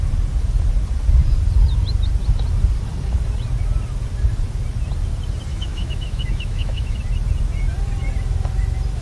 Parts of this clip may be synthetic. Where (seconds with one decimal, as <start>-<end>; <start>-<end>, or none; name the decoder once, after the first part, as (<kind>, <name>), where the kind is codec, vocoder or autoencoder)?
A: 5.5-7.0 (autoencoder, DAC-VAE)